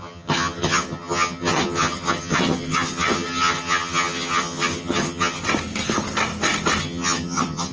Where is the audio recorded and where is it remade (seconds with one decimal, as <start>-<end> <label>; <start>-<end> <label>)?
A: 0.0-5.4 remade; 5.4-6.8 recorded; 6.8-7.7 remade